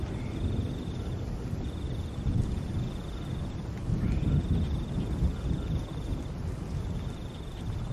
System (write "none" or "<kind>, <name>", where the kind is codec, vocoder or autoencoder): none